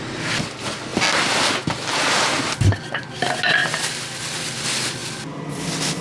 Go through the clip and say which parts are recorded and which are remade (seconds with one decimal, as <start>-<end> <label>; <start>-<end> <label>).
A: 0.0-6.0 recorded